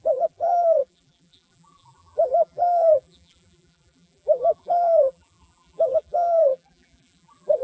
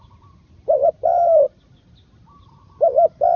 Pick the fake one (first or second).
first